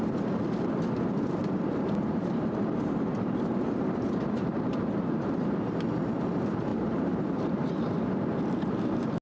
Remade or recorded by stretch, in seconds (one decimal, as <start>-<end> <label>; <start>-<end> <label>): 0.0-1.4 recorded; 1.4-5.8 remade; 5.8-6.7 recorded; 6.7-7.7 remade; 7.7-9.2 recorded